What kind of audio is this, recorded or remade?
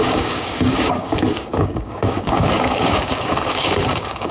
remade